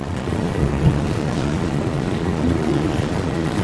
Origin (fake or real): fake